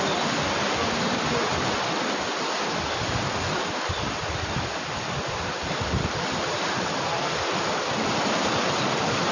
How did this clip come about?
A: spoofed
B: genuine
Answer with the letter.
B